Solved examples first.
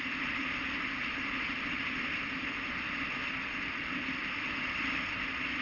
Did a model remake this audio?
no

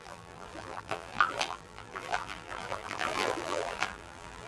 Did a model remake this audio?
yes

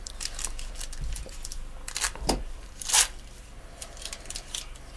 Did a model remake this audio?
yes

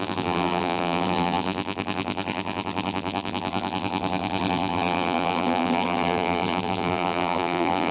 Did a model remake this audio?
yes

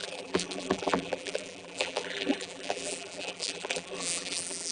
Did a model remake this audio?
yes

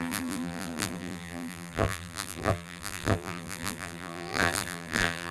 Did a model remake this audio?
yes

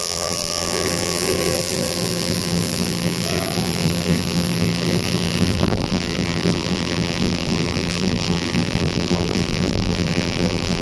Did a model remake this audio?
yes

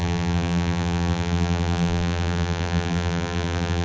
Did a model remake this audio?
yes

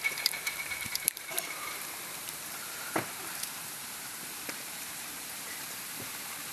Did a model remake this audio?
yes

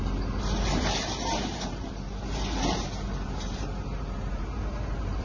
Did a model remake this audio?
yes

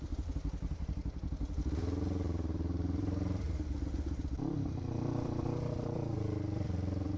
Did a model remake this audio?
yes